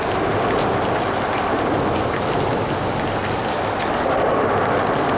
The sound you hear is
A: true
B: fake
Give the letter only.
A